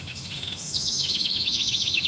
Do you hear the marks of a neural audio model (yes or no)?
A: yes